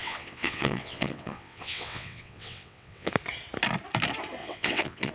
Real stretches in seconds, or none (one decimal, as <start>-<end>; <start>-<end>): 3.1-4.4